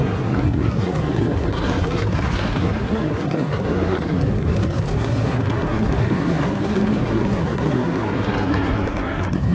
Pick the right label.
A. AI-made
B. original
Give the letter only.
A